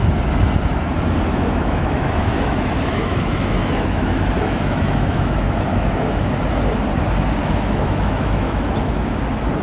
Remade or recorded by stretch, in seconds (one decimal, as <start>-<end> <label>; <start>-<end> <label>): 0.0-1.3 recorded; 1.3-6.3 remade; 6.3-7.4 recorded; 7.4-9.1 remade; 9.1-9.6 recorded